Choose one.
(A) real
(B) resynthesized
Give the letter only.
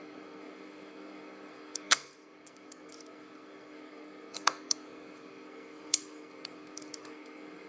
B